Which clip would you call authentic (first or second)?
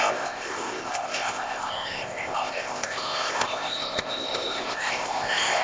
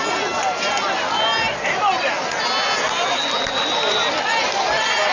second